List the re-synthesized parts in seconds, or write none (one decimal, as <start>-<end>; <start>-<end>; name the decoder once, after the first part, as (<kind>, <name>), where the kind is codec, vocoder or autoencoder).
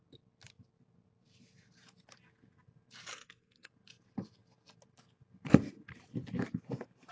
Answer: 3.1-3.7 (codec, SNAC)